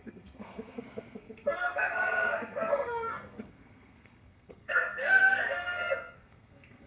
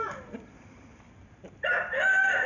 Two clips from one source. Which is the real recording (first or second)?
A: second